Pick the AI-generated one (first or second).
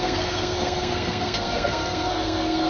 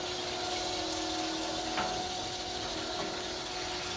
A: first